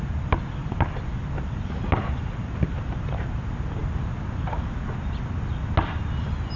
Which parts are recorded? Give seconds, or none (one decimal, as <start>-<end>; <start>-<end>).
0.0-6.6